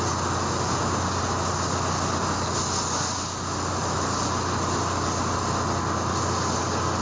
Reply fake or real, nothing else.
real